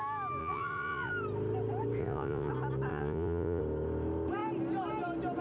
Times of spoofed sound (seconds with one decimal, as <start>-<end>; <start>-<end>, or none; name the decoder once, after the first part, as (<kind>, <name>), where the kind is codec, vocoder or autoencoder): 0.4-1.1 (vocoder, Vocos); 2.0-2.5; 2.9-3.6